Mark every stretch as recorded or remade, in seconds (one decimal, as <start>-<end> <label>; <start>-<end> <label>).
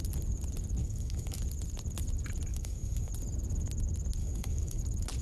0.0-0.8 recorded; 0.8-1.4 remade; 1.4-2.5 recorded; 2.5-3.1 remade; 3.1-4.2 recorded; 4.2-4.8 remade; 4.8-5.2 recorded